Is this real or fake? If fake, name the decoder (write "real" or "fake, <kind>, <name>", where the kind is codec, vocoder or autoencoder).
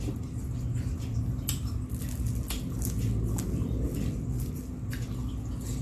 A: real